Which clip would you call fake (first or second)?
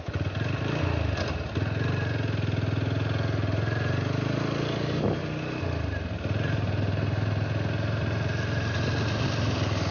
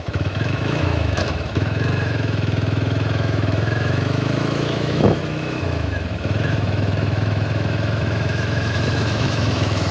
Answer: second